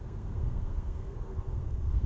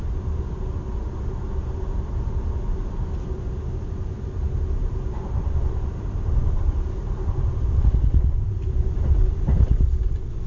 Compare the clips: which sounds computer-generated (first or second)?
first